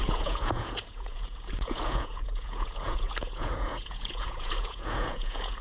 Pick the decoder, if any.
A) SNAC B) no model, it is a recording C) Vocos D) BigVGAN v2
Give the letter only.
C